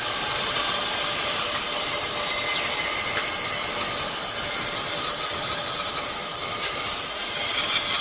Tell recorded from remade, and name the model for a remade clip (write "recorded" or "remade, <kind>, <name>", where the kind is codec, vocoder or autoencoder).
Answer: recorded